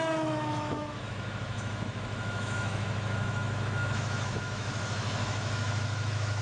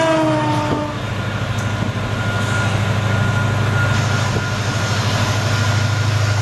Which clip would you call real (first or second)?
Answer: second